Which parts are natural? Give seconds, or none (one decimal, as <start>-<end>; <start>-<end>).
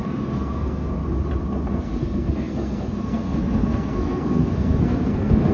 1.0-1.7